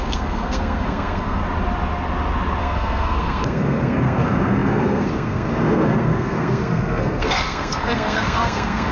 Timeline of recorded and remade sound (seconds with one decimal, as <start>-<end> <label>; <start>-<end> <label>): 0.0-1.4 remade; 1.4-2.6 recorded; 2.6-8.9 remade